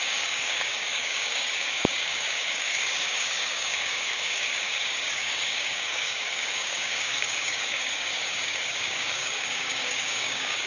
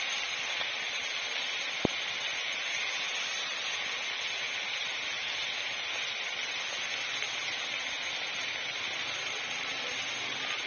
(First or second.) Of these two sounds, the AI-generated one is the first